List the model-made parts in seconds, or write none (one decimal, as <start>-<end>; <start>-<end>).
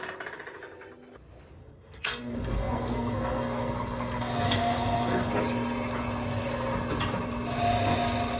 1.6-5.3